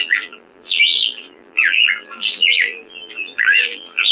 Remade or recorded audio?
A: remade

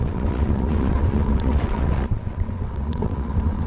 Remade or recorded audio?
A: remade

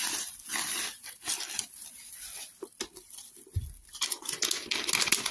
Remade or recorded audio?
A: recorded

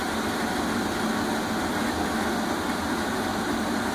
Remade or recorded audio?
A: recorded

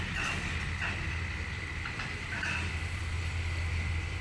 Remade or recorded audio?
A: remade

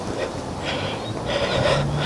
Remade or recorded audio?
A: recorded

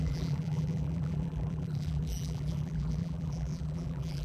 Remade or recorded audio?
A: remade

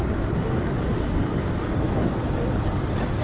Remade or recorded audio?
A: recorded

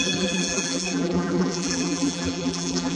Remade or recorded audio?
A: remade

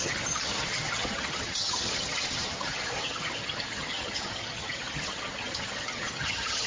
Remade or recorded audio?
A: remade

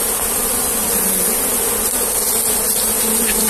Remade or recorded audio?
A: recorded